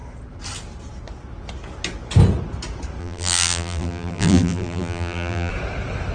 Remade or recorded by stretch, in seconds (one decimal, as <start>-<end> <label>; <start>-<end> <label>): 0.0-3.0 recorded; 3.0-5.5 remade; 5.5-6.1 recorded